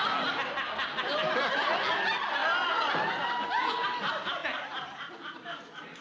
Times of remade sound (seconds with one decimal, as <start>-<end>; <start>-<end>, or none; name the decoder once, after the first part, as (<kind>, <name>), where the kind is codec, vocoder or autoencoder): none